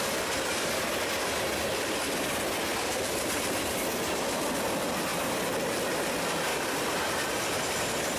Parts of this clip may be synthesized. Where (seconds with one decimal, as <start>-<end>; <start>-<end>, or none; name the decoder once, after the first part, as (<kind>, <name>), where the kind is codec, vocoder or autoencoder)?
2.7-4.4 (vocoder, BigVGAN v2); 5.1-6.0; 6.5-8.2